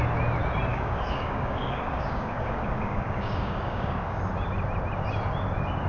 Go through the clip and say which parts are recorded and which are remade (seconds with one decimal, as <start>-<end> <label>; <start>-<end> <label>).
0.0-0.7 recorded; 0.7-4.2 remade; 4.2-5.9 recorded